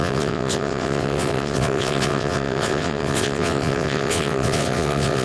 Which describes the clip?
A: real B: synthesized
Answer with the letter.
B